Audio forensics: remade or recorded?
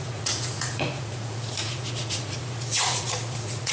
remade